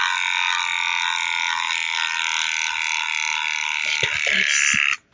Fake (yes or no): no